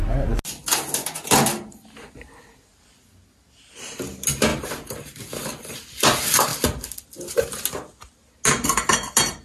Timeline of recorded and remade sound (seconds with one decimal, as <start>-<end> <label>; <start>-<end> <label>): 0.0-4.5 recorded; 4.5-5.7 remade; 5.7-9.4 recorded